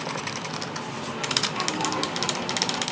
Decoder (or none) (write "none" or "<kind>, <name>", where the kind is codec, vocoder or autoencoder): none